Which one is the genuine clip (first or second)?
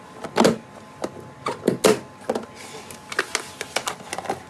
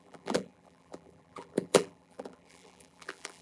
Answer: first